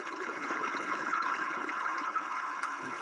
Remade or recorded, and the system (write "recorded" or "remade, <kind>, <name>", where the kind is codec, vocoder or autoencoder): remade, codec, HILCodec